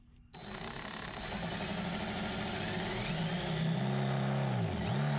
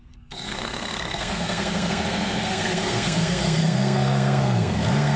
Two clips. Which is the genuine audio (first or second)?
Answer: first